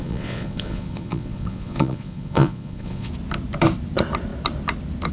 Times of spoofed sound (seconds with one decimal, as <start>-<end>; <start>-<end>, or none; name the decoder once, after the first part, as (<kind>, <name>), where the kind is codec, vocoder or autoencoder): 0.0-3.1 (vocoder, Vocos)